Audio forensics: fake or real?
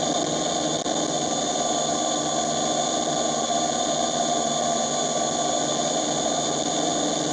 real